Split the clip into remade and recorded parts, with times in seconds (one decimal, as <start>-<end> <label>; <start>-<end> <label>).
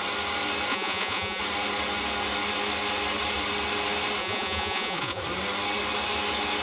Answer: 0.0-0.7 recorded; 0.7-1.4 remade; 1.4-4.2 recorded; 4.2-5.2 remade; 5.2-6.6 recorded